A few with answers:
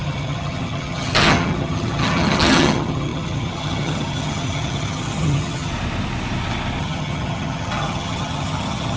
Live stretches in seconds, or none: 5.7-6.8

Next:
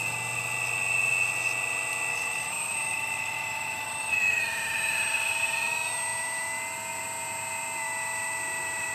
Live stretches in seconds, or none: 0.0-2.1; 4.4-8.9

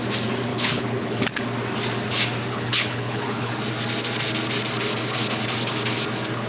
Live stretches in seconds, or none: 0.0-0.5; 1.2-2.5; 3.5-6.5

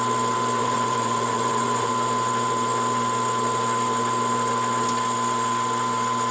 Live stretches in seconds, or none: 0.0-0.6; 1.9-6.3

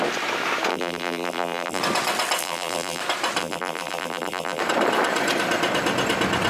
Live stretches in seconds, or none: 0.0-0.7; 1.8-2.4; 3.0-3.4; 4.6-6.5

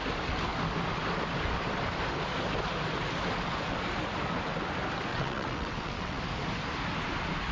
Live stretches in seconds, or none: 0.0-5.1; 6.2-7.5

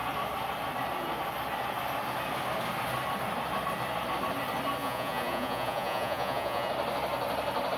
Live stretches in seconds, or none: 0.0-4.8; 6.7-7.8

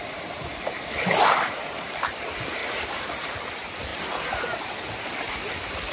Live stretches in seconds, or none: 0.0-1.2; 1.9-2.6; 3.5-3.9; 5.3-5.9